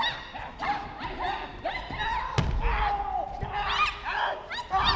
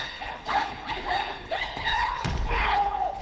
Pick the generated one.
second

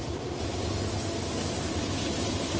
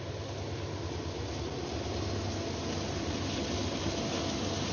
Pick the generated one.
first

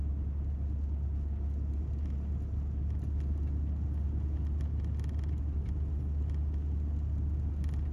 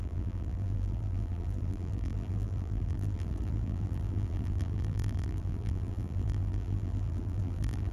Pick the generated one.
second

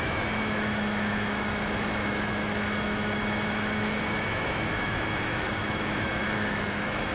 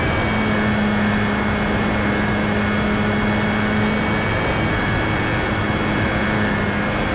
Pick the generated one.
first